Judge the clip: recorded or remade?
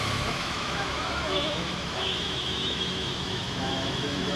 remade